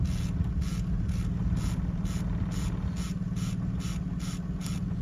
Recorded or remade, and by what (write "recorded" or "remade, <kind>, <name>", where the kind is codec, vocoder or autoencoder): recorded